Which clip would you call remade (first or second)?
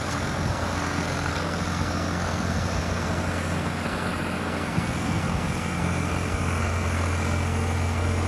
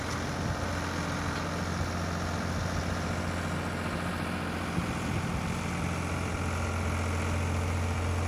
first